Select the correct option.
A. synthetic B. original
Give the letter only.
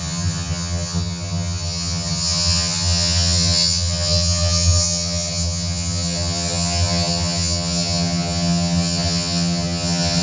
A